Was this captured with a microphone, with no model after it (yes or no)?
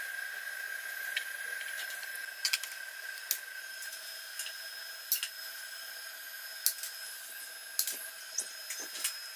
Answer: yes